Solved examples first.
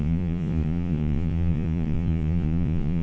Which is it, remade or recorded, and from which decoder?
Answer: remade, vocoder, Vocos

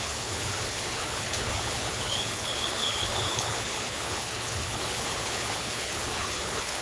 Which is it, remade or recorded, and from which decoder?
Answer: remade, codec, HILCodec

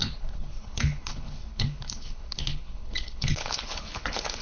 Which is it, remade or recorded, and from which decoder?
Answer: remade, codec, HILCodec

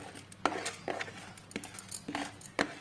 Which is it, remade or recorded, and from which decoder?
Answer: recorded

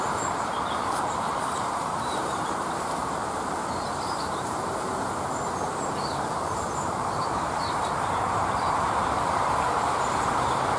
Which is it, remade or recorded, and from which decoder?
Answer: remade, vocoder, BigVGAN v2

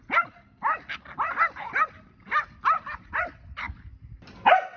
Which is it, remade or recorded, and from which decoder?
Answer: recorded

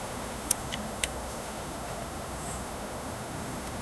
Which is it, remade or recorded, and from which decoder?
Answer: remade, autoencoder, DAC-VAE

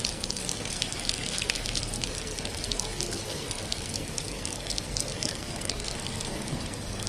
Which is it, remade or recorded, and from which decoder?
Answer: remade, codec, SNAC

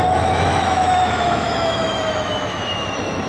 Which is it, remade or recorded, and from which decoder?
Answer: remade, autoencoder, DAC-VAE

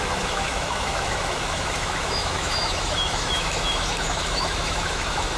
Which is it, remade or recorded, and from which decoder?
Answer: remade, autoencoder, DAC-VAE